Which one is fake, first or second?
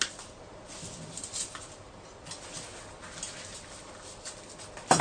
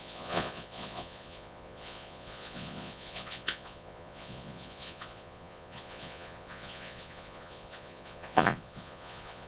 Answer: second